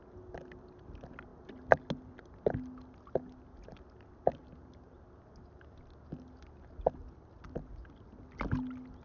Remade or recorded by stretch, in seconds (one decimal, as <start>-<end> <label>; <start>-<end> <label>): 0.0-9.0 recorded